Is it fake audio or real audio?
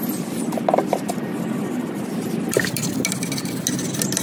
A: real